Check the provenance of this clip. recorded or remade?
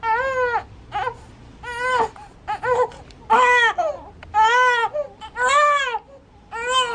recorded